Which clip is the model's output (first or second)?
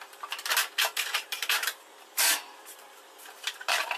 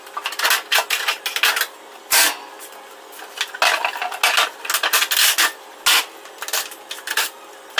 first